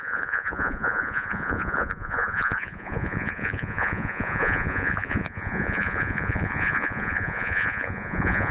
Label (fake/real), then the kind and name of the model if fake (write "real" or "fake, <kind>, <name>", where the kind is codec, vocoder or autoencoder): fake, vocoder, Vocos